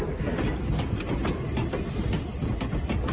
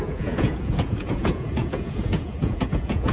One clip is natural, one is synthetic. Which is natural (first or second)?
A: first